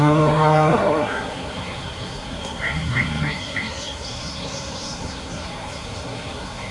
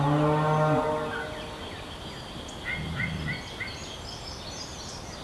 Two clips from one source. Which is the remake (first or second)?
first